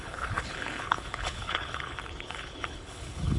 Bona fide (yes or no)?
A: no